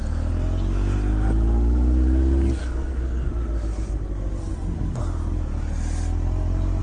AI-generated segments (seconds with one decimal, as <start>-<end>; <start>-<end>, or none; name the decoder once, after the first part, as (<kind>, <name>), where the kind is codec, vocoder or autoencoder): 2.6-3.3 (codec, SNAC)